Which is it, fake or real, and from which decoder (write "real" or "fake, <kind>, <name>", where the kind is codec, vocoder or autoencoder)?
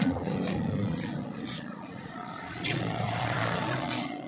fake, vocoder, Vocos